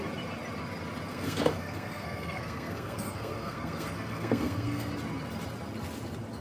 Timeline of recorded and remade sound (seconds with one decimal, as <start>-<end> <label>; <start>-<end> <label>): 0.0-1.1 recorded; 1.1-4.9 remade; 4.9-6.4 recorded

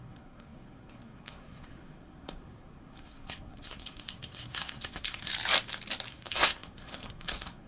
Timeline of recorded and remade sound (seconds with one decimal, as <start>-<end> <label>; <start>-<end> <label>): 0.0-5.3 remade; 5.3-6.1 recorded; 6.1-7.7 remade

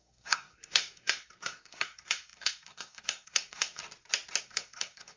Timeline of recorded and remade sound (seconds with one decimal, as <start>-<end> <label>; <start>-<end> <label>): 0.0-3.8 remade; 3.8-4.4 recorded; 4.4-5.2 remade

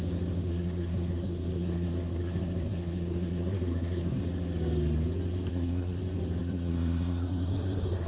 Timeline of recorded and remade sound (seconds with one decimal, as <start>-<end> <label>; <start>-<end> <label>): 0.0-0.4 recorded; 0.4-4.2 remade; 4.2-5.5 recorded; 5.5-6.0 remade; 6.0-6.4 recorded; 6.4-8.1 remade

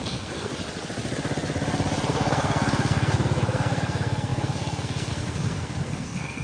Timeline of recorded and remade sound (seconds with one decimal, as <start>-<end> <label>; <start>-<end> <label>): 0.0-0.5 remade; 0.5-2.1 recorded; 2.1-6.4 remade